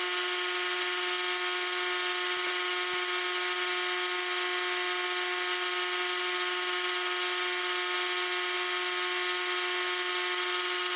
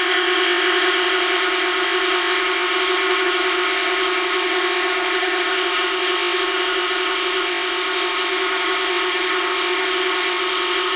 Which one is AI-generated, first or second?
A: second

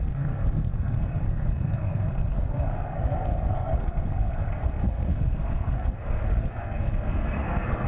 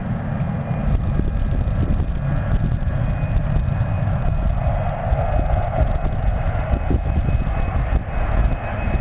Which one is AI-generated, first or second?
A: first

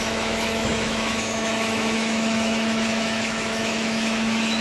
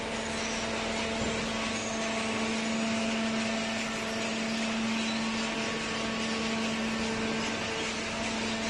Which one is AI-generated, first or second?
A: first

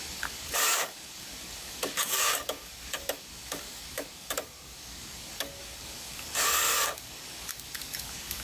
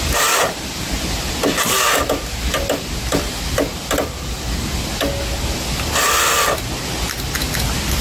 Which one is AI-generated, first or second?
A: first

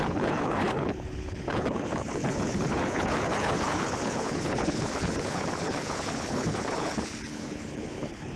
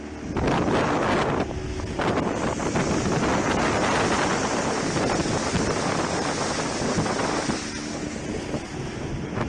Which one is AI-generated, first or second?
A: first